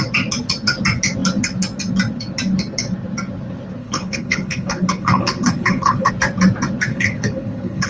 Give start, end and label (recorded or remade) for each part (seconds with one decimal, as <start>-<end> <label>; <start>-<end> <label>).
0.0-3.8 recorded; 3.8-6.1 remade; 6.1-6.9 recorded; 6.9-7.9 remade